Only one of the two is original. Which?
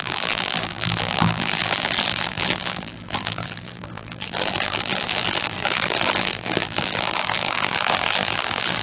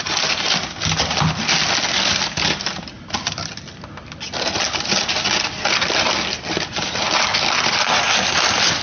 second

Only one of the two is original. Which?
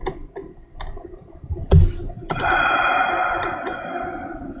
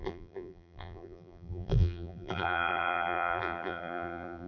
first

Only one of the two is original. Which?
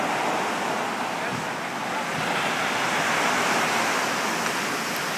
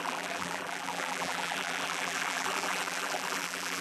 first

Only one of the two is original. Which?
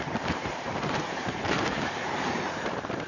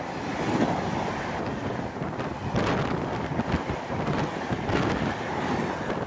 second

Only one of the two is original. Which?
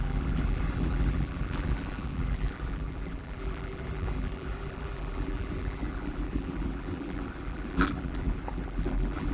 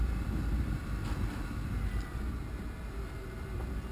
second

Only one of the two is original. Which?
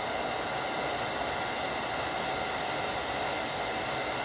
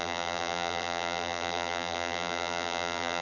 first